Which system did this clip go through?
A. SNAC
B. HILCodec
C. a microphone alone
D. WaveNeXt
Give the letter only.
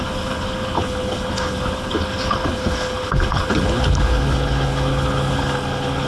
B